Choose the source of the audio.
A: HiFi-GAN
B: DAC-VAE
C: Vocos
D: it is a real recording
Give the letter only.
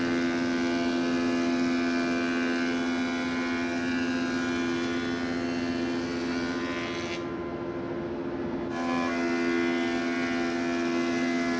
D